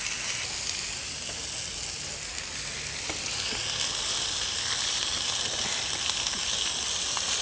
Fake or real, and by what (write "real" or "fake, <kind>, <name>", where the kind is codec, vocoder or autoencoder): real